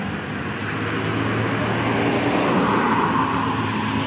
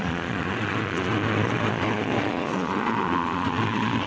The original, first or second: first